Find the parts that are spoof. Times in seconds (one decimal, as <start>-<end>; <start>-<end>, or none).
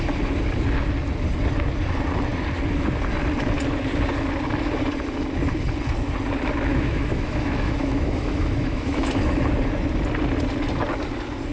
6.7-9.4